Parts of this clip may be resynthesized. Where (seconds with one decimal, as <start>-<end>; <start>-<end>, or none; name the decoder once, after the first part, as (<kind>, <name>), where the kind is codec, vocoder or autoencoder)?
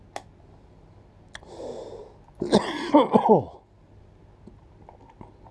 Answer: none